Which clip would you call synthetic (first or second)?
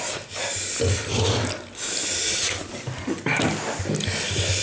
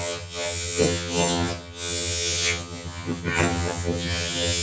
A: second